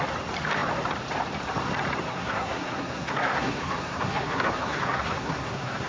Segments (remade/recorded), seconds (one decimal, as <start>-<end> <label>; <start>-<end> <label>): 0.0-2.1 recorded; 2.1-5.9 remade